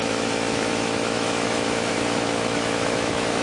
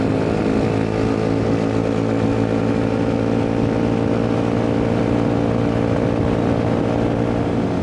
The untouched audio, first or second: second